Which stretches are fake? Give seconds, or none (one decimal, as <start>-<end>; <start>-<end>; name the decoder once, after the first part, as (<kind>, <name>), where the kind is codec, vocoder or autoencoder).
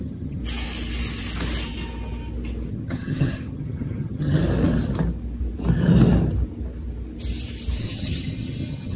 0.0-0.4 (vocoder, HiFi-GAN); 2.7-4.4; 7.8-9.0